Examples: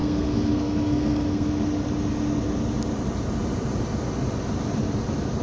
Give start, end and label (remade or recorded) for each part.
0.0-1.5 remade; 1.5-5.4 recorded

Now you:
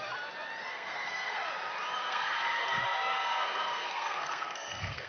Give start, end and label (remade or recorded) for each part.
0.0-0.7 recorded; 0.7-1.5 remade; 1.5-2.0 recorded; 2.0-5.1 remade

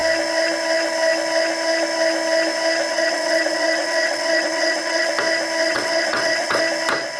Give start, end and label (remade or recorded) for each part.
0.0-2.9 recorded; 2.9-5.1 remade; 5.1-5.6 recorded; 5.6-6.6 remade; 6.6-7.2 recorded

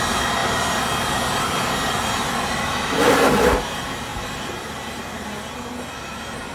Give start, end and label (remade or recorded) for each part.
0.0-6.5 recorded

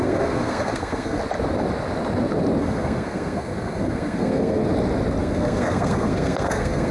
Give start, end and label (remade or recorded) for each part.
0.0-1.2 remade; 1.2-2.6 recorded; 2.6-4.6 remade; 4.6-5.2 recorded; 5.2-6.9 remade

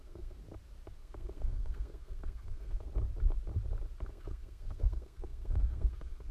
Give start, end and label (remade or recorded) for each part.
0.0-0.4 remade; 0.4-1.0 recorded; 1.0-2.9 remade; 2.9-4.1 recorded; 4.1-6.3 remade

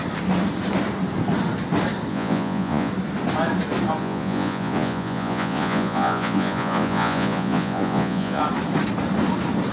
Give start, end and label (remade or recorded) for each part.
0.0-2.1 recorded; 2.1-2.9 remade; 2.9-4.0 recorded; 4.0-8.4 remade; 8.4-9.7 recorded

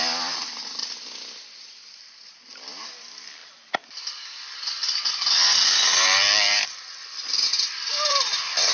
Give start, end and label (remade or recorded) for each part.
0.0-0.8 remade; 0.8-1.6 recorded; 1.6-3.4 remade; 3.4-5.1 recorded; 5.1-8.7 remade